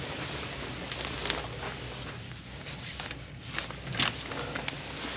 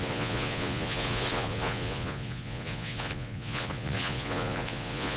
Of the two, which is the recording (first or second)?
first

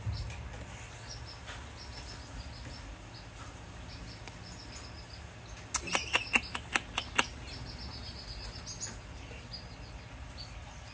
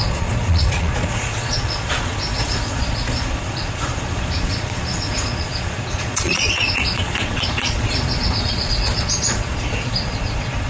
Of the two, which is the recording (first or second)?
first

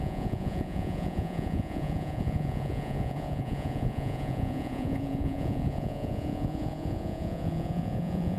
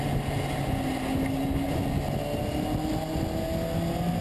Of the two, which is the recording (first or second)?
second